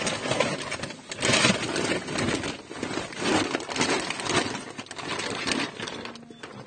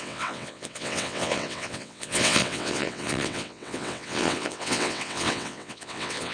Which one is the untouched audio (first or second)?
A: first